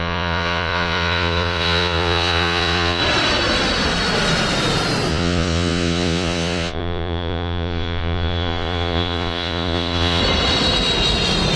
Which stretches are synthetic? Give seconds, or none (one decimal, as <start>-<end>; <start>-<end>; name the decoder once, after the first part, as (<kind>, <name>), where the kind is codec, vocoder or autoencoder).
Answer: 0.0-3.0 (vocoder, Vocos); 5.1-10.2